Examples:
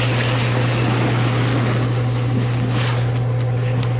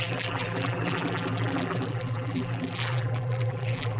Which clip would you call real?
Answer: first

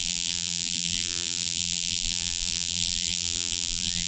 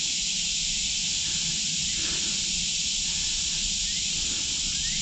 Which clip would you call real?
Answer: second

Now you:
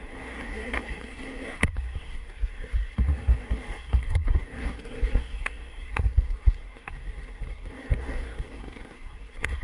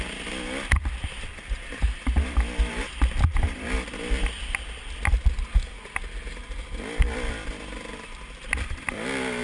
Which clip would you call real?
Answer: second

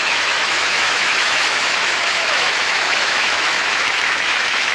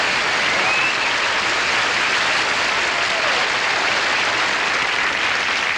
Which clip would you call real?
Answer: second